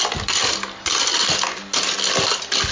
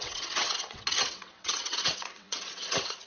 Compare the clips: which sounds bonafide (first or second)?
first